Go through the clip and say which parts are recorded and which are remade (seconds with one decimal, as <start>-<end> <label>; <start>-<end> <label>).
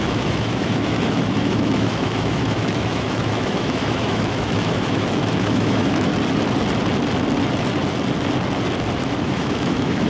0.0-6.1 remade; 6.1-9.0 recorded; 9.0-10.1 remade